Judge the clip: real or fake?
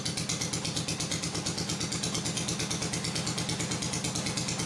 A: real